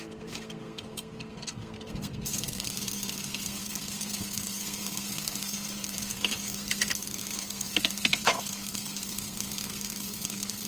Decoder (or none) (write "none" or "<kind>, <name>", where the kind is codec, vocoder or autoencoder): codec, SNAC